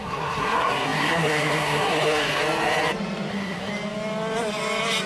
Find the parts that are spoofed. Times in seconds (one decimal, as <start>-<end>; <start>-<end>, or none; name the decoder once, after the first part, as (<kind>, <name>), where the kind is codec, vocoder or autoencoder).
0.0-2.4 (codec, SNAC); 3.3-3.7